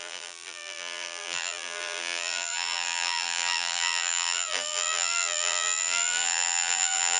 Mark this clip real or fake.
fake